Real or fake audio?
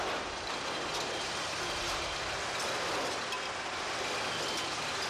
real